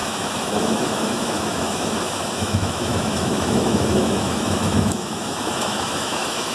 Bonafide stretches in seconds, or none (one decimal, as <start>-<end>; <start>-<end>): none